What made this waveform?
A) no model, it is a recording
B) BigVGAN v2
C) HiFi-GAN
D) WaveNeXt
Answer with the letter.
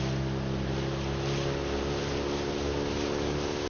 A